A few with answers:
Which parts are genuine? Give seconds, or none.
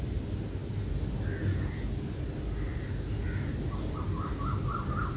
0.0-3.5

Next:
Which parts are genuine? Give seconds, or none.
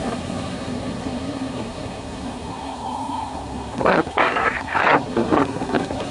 none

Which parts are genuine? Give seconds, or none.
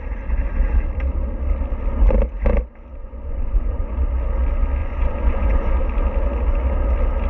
0.0-3.0; 3.9-4.8; 5.8-7.3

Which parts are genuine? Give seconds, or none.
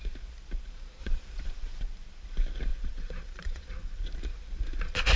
0.0-1.0; 1.8-2.7; 4.1-5.2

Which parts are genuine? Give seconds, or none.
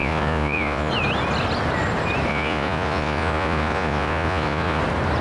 0.9-2.3; 4.8-5.2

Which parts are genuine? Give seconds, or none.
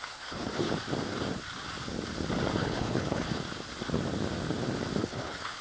0.7-2.6; 3.4-5.0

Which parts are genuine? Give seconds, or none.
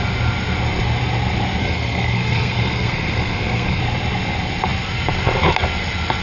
0.0-1.6; 3.8-6.2